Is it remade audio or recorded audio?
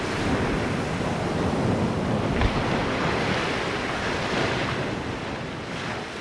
recorded